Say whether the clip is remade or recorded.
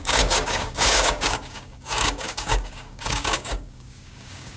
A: remade